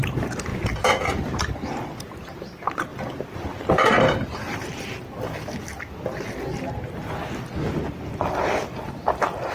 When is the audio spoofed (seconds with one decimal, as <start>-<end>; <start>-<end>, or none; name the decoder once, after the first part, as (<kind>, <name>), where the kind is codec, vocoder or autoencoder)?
0.0-0.5 (vocoder, BigVGAN v2); 2.0-2.9; 3.7-4.7; 8.8-9.5